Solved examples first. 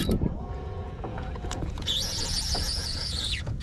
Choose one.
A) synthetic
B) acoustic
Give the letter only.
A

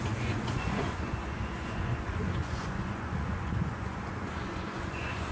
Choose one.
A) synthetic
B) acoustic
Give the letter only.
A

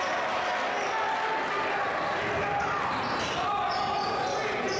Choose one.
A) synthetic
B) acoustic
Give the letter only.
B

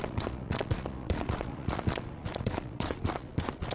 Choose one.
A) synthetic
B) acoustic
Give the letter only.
A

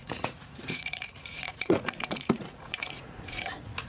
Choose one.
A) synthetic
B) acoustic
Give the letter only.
A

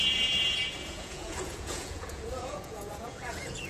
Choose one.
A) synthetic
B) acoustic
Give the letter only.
A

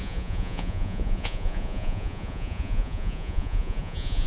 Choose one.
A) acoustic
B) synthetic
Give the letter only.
B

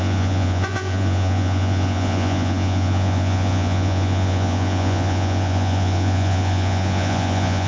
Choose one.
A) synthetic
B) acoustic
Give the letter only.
A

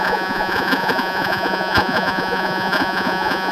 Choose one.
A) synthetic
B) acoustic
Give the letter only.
A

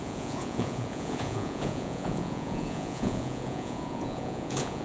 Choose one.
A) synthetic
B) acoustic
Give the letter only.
A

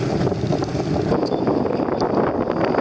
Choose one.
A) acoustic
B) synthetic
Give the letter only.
A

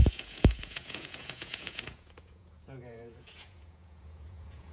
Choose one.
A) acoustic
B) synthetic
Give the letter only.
B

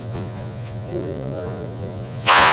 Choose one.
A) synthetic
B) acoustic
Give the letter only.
A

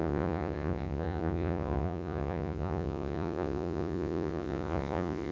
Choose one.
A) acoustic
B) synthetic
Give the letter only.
B